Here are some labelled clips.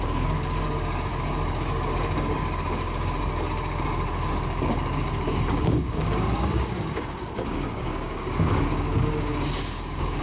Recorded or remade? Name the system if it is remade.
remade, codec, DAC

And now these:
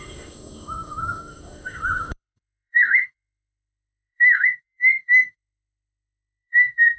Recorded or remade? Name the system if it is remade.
remade, autoencoder, DAC-VAE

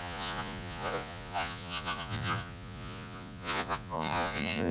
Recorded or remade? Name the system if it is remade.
remade, vocoder, Vocos